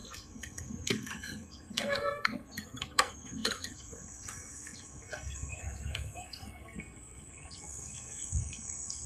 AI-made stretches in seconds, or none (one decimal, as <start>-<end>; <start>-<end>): 0.0-9.1